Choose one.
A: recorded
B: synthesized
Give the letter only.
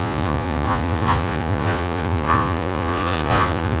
B